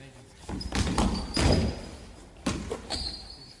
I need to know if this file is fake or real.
real